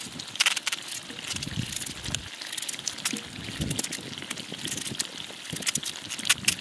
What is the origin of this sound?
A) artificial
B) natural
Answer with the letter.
B